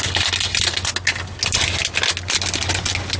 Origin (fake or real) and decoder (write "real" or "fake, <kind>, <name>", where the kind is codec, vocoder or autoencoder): real